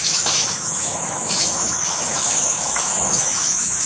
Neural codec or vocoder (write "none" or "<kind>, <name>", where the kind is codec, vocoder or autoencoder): autoencoder, DAC-VAE